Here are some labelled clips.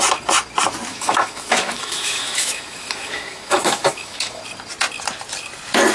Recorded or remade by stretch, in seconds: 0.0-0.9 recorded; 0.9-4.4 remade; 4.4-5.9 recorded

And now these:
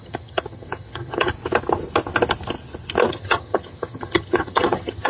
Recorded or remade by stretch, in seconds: 0.0-1.3 remade; 1.3-3.1 recorded; 3.1-5.1 remade

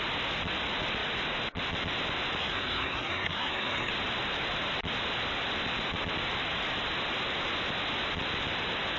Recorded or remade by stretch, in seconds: 0.0-2.4 recorded; 2.4-3.9 remade; 3.9-9.0 recorded

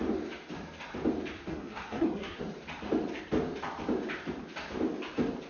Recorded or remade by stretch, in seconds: 0.0-1.4 recorded; 1.4-2.4 remade; 2.4-5.5 recorded

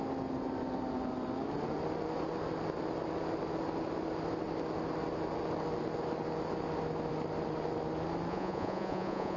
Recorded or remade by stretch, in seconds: 0.0-8.3 recorded; 8.3-9.4 remade

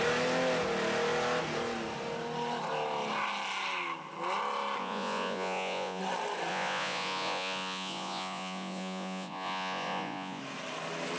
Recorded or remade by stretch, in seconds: 0.0-4.8 recorded; 4.8-6.0 remade; 6.0-6.5 recorded; 6.5-10.4 remade; 10.4-11.2 recorded